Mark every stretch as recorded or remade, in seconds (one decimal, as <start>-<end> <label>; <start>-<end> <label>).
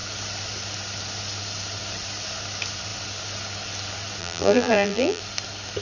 0.0-4.2 recorded; 4.2-5.2 remade; 5.2-5.8 recorded